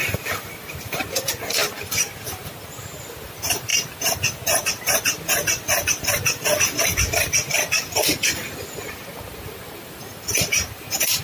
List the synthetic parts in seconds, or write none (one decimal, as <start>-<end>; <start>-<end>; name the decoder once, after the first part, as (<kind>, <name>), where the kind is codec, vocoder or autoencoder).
none